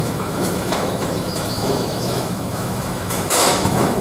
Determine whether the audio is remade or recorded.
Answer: remade